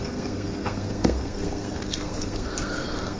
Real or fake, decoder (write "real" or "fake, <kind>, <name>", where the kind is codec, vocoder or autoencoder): fake, codec, SNAC